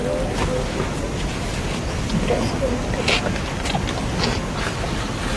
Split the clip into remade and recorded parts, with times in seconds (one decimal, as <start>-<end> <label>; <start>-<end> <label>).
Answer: 0.0-5.4 recorded